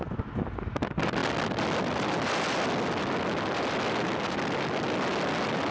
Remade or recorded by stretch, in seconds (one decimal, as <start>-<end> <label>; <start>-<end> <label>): 0.0-5.7 recorded